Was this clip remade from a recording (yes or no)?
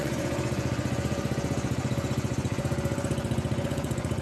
yes